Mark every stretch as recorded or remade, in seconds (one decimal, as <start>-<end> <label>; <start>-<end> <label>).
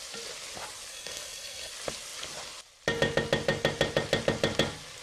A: 0.0-0.9 recorded; 0.9-1.7 remade; 1.7-5.0 recorded